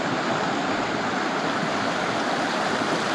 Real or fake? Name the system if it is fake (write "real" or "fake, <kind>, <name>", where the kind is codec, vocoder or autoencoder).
real